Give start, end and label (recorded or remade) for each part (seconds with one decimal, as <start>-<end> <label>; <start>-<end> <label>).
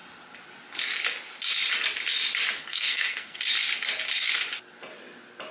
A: 0.0-2.6 recorded; 2.6-3.4 remade; 3.4-5.5 recorded